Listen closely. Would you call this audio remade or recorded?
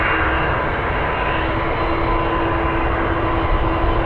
recorded